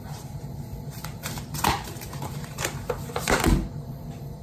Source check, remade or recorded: remade